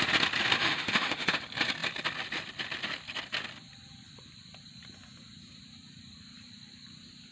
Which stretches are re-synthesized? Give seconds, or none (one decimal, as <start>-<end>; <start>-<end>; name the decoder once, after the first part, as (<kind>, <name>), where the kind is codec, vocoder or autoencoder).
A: 0.6-1.4 (autoencoder, DAC-VAE)